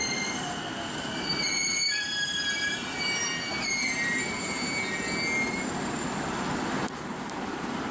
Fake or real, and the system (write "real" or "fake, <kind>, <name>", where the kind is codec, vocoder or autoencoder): real